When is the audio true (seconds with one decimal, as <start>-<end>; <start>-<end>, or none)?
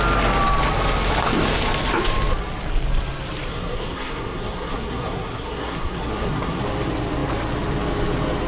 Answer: 0.0-3.5; 6.6-8.5